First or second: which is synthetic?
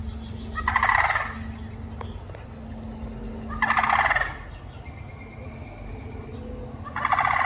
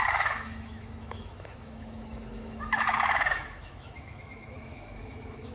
second